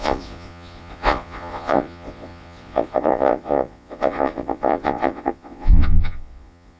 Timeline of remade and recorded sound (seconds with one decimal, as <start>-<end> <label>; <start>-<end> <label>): 0.0-6.8 remade